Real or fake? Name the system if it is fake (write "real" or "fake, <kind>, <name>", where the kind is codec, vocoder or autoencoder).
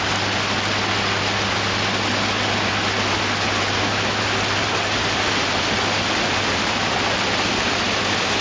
real